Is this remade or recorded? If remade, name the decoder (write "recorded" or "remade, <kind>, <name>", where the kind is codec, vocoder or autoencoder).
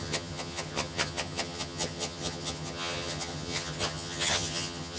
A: remade, vocoder, HiFi-GAN